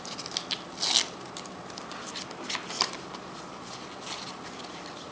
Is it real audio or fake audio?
real